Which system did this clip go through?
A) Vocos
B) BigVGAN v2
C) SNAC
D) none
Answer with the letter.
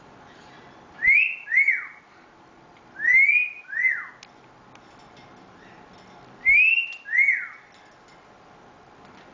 D